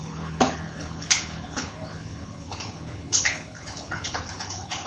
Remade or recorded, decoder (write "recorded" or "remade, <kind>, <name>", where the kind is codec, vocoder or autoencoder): remade, codec, HILCodec